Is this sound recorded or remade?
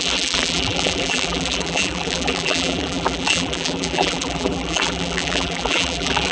remade